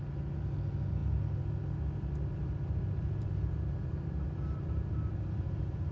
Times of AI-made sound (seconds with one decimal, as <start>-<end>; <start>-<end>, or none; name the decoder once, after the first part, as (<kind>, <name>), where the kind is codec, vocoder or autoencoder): 2.4-5.9 (vocoder, BigVGAN v2)